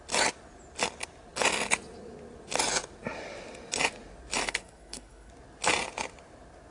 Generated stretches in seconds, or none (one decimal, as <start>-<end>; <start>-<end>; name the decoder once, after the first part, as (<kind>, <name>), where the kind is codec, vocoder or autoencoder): 4.4-5.3 (codec, SNAC)